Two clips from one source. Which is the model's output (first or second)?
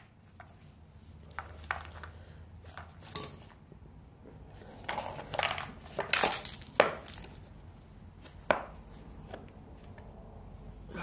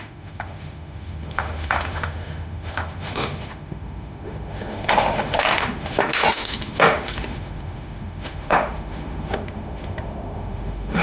second